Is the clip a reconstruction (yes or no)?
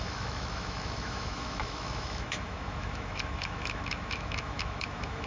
yes